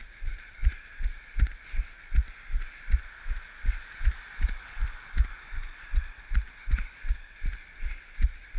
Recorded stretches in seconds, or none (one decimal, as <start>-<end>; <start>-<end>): 0.0-8.6